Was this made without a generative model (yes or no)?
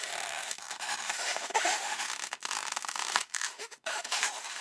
no